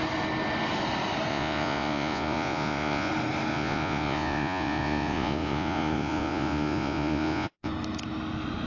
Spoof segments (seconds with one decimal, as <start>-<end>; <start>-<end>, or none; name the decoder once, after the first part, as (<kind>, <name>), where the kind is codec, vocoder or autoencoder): 1.3-3.1 (vocoder, Vocos); 3.5-7.7